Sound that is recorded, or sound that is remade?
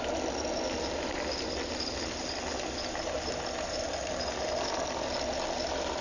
recorded